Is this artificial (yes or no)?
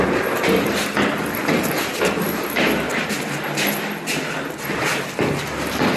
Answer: no